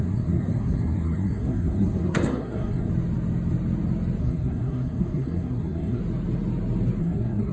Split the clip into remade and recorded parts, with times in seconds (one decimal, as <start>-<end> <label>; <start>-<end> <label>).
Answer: 0.0-2.9 remade; 2.9-4.2 recorded; 4.2-6.0 remade; 6.0-7.0 recorded; 7.0-7.5 remade